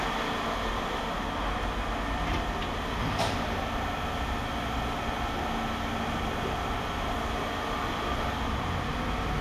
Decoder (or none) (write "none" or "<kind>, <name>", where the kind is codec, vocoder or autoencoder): none